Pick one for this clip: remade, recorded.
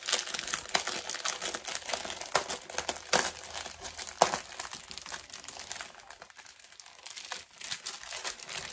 recorded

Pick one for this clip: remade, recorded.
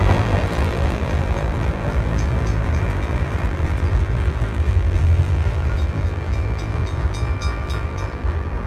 remade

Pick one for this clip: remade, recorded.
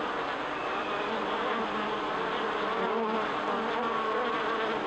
recorded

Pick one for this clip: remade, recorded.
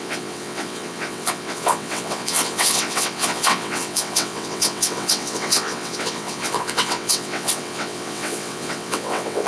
remade